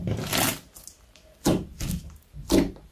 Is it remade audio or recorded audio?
recorded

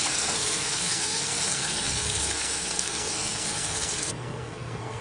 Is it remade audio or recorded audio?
remade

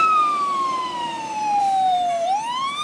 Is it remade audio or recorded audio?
remade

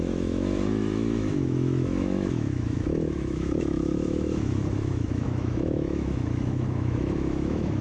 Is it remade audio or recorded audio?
remade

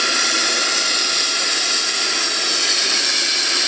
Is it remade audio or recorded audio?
recorded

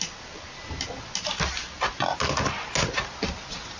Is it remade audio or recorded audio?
recorded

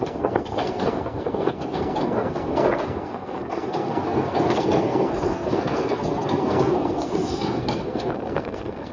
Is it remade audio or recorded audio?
remade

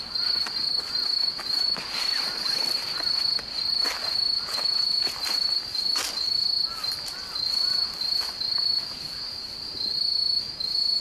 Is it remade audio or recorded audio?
recorded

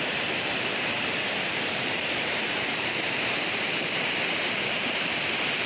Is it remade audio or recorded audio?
remade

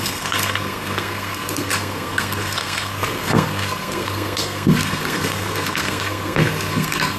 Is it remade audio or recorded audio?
remade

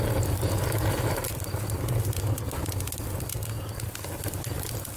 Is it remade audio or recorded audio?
recorded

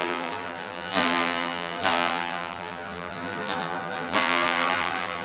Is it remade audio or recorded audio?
remade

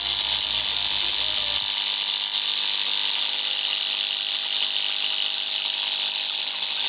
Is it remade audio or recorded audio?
recorded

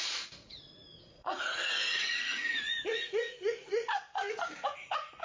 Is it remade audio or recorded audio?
remade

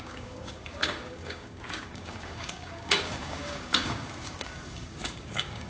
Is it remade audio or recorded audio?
remade